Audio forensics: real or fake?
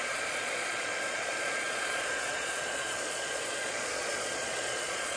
fake